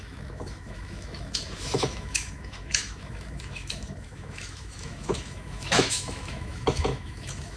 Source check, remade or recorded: remade